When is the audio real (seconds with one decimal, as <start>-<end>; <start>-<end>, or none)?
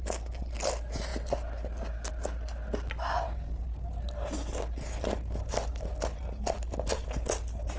0.0-7.8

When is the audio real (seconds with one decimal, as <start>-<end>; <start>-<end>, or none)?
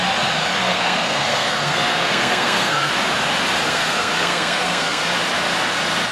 0.0-0.6; 2.9-3.7; 5.0-6.1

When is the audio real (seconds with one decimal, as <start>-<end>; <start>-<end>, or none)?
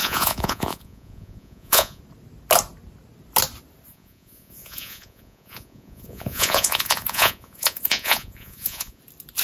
2.0-3.9; 9.0-9.4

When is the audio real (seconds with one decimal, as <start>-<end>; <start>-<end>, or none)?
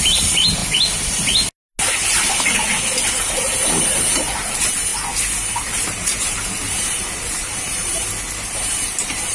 0.6-3.1; 4.9-5.5; 8.0-8.5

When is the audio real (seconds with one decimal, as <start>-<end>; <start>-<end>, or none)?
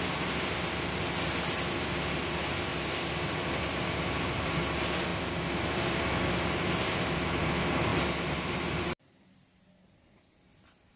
0.0-2.7; 4.6-5.1; 6.3-7.9; 9.9-11.0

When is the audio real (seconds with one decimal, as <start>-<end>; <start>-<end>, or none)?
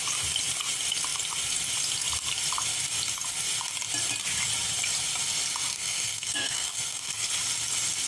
0.0-5.7; 7.3-8.1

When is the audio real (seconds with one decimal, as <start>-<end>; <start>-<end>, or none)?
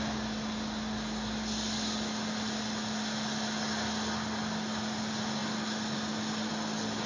0.0-7.1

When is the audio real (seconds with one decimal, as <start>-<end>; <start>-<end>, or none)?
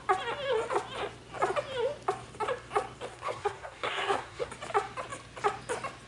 0.0-3.1; 4.5-6.1